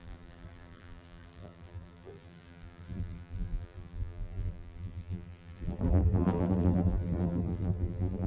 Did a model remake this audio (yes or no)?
yes